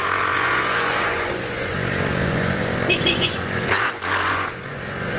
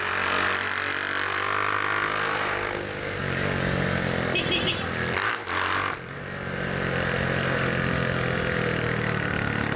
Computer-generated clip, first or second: first